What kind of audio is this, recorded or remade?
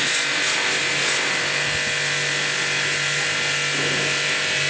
recorded